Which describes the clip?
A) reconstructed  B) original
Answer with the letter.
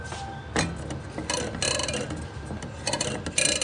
B